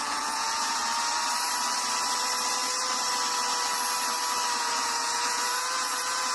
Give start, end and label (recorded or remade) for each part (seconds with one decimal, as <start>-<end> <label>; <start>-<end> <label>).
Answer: 0.0-0.8 remade; 0.8-4.6 recorded; 4.6-6.3 remade